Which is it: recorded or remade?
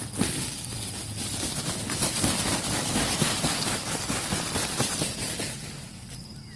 recorded